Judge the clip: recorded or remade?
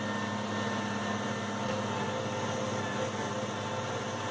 recorded